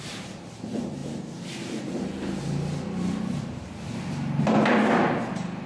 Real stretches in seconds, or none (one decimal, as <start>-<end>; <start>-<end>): 0.0-5.7